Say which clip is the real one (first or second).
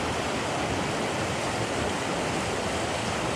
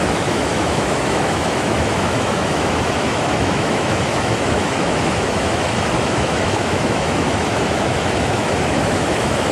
first